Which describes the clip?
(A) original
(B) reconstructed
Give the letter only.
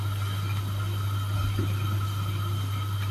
A